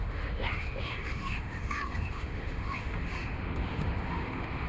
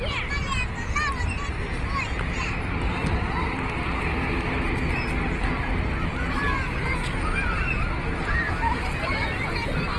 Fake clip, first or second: first